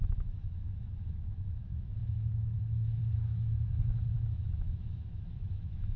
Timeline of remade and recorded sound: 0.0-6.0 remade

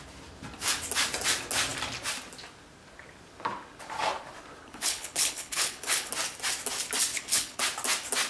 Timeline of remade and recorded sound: 0.0-4.6 recorded; 4.6-6.1 remade; 6.1-7.1 recorded; 7.1-7.6 remade; 7.6-8.3 recorded

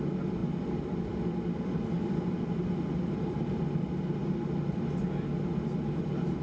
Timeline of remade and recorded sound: 0.0-6.4 recorded

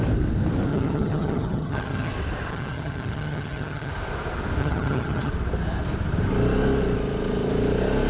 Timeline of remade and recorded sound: 0.0-0.7 recorded; 0.7-2.1 remade; 2.1-2.5 recorded; 2.5-3.9 remade; 3.9-4.6 recorded; 4.6-5.3 remade; 5.3-8.1 recorded

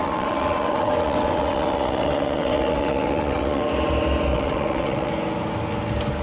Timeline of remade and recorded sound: 0.0-3.7 remade; 3.7-4.3 recorded; 4.3-5.1 remade; 5.1-6.2 recorded

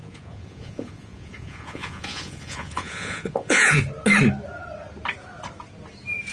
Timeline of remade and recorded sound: 0.0-3.8 remade; 3.8-6.3 recorded

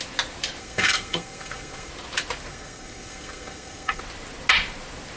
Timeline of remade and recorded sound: 0.0-0.6 recorded; 0.6-1.9 remade; 1.9-2.5 recorded; 2.5-4.0 remade; 4.0-5.2 recorded